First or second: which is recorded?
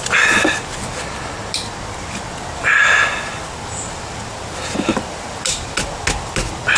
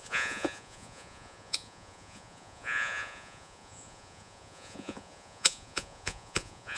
first